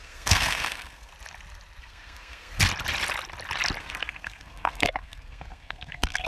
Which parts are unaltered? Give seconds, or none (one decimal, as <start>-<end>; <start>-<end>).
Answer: 1.1-1.8; 2.6-3.8